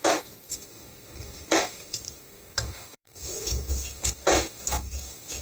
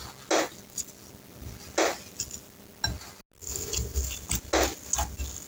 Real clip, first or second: second